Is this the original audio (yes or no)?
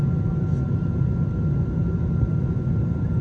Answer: yes